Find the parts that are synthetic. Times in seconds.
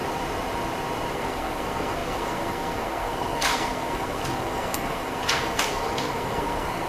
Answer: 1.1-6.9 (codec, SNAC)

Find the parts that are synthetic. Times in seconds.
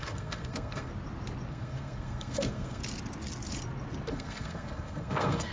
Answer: 0.0-0.9 (codec, SNAC); 1.5-2.8; 4.1-5.5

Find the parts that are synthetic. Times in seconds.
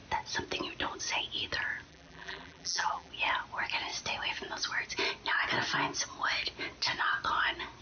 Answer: 1.9-3.1 (vocoder, BigVGAN v2)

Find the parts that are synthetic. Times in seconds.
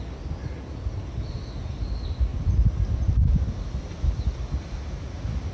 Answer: none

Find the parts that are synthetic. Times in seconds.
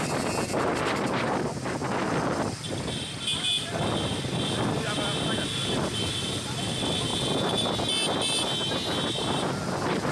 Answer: none